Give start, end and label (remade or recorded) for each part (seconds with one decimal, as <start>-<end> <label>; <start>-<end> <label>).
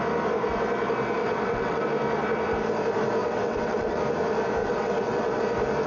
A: 0.0-1.2 recorded; 1.2-1.8 remade; 1.8-3.2 recorded; 3.2-4.0 remade; 4.0-4.6 recorded; 4.6-5.4 remade; 5.4-5.9 recorded